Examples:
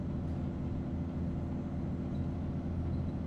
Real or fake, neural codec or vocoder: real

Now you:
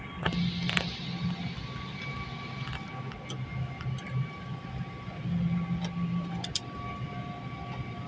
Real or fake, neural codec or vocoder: real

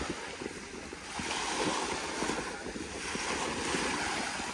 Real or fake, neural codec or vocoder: real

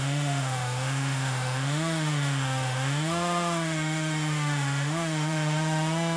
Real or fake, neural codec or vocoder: fake, autoencoder, DAC-VAE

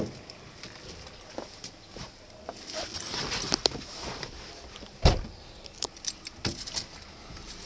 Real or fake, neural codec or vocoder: real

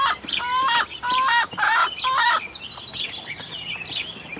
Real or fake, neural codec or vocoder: real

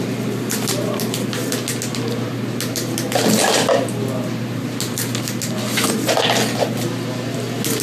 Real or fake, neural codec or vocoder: real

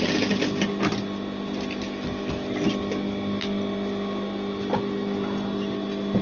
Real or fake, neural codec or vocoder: real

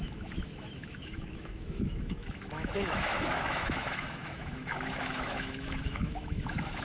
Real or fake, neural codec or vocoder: fake, autoencoder, DAC-VAE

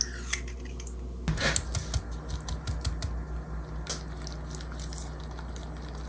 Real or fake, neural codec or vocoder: real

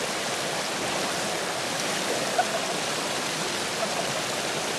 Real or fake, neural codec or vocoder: real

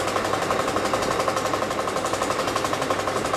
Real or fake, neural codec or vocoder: real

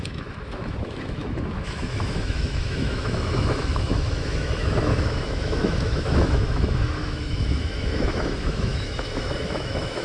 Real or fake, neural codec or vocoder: fake, autoencoder, DAC-VAE